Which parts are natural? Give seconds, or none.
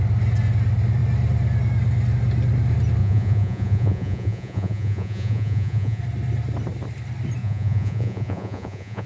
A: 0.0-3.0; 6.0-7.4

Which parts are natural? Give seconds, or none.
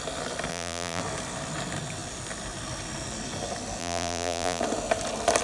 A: 0.0-0.5; 1.0-3.8; 4.6-5.4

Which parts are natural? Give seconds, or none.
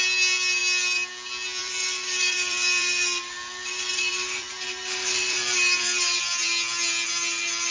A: 0.0-1.6; 6.2-7.7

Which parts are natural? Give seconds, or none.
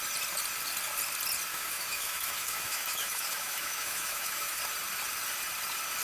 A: 0.0-1.5; 4.6-6.0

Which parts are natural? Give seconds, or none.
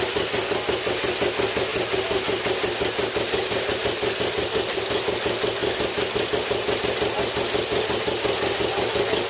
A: 0.0-9.3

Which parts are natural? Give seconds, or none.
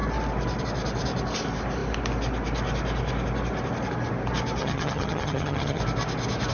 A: 0.0-4.6; 5.8-6.5